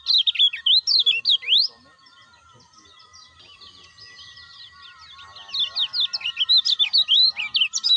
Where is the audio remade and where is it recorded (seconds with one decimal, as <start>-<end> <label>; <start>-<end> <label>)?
0.0-8.0 recorded